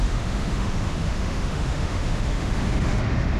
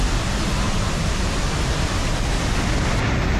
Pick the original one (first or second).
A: second